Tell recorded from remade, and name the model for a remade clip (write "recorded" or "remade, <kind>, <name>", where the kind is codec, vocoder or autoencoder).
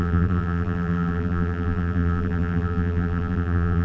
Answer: remade, vocoder, BigVGAN v2